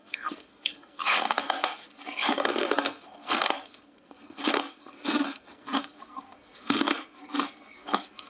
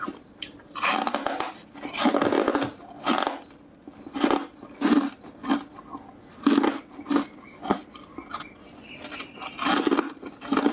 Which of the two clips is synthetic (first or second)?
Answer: first